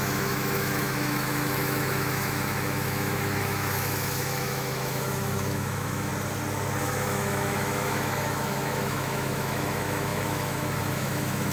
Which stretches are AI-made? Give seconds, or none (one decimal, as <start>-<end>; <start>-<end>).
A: 0.0-6.1; 6.8-11.5